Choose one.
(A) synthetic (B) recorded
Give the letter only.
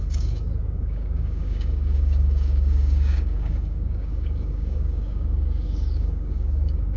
A